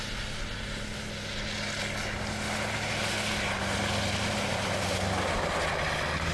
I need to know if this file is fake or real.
real